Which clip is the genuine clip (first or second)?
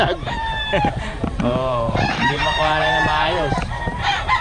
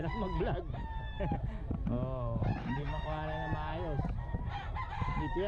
second